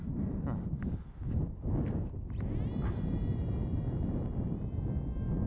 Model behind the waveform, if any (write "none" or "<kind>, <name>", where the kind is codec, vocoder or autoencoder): none